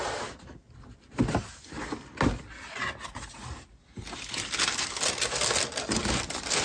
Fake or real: real